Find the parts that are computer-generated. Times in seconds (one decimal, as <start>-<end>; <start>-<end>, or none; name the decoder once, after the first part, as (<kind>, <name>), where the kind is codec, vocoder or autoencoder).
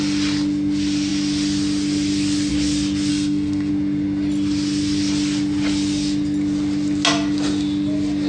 3.1-3.7 (codec, SNAC)